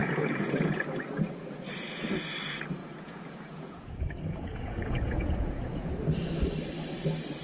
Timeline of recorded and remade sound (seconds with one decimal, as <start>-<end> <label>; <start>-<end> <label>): 0.0-0.8 remade; 0.8-2.8 recorded; 2.8-5.9 remade; 5.9-7.4 recorded